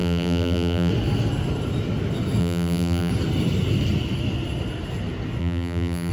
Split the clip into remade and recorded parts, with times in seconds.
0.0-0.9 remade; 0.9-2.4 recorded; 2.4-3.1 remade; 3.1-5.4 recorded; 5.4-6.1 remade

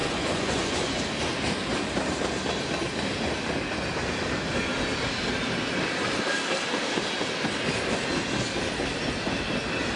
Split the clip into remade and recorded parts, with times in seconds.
0.0-1.0 remade; 1.0-10.0 recorded